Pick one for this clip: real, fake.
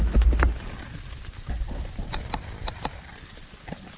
real